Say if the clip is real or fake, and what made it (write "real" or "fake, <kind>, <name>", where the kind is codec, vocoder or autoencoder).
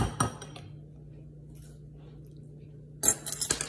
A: real